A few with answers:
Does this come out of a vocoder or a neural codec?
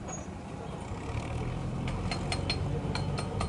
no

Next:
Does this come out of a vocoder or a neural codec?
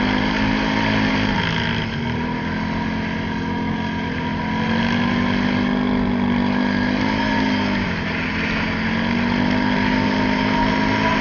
no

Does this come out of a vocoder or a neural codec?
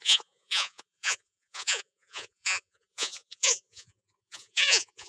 yes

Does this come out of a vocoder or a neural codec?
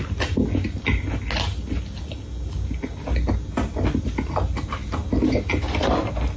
no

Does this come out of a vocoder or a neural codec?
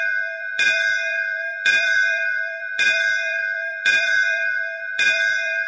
yes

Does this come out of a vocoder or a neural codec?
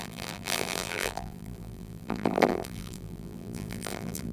yes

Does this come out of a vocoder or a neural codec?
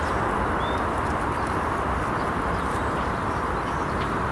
yes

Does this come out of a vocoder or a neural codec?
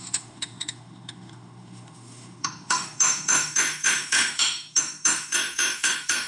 yes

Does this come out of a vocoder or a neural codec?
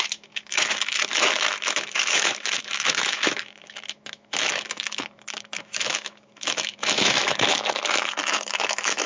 yes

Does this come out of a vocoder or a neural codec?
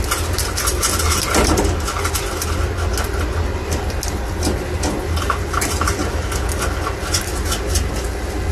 no